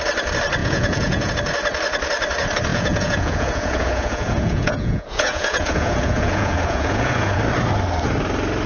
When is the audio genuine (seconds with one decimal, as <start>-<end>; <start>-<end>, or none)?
0.0-0.6; 1.3-2.7; 7.4-8.7